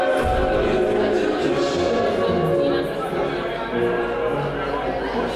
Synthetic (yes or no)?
no